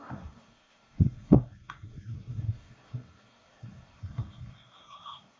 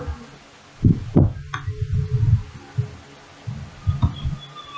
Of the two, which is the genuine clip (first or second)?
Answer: second